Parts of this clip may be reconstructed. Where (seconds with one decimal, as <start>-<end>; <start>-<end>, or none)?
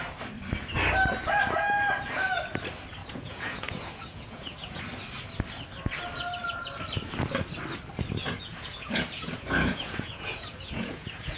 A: 3.0-4.8; 8.2-11.4